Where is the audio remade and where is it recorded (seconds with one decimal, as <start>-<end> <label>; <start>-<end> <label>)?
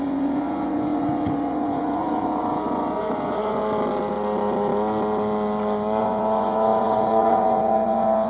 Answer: 0.0-3.6 remade; 3.6-6.0 recorded; 6.0-8.3 remade